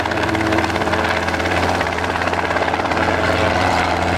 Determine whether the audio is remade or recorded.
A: remade